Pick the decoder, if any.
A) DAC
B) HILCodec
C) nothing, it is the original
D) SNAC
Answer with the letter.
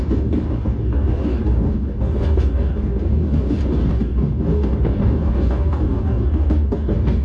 A